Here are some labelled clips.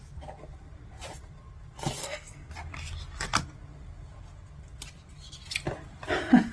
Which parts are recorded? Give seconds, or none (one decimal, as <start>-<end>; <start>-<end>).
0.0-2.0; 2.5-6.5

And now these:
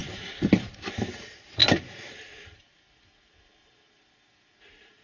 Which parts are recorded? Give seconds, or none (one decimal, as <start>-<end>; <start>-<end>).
0.0-1.2; 1.6-4.6

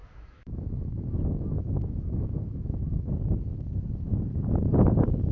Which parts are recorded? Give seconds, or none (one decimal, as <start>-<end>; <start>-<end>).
3.1-5.3

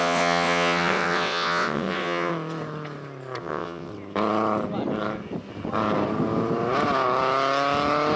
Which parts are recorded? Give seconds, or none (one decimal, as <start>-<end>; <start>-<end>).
2.3-3.4; 3.9-8.2

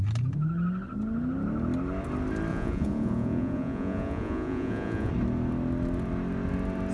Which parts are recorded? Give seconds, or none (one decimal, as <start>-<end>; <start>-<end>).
0.0-2.5; 5.1-6.9

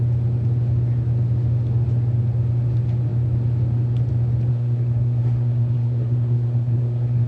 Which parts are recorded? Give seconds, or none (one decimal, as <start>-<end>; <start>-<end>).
0.0-4.5